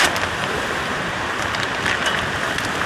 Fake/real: real